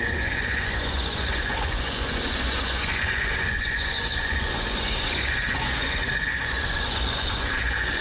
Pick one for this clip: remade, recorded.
remade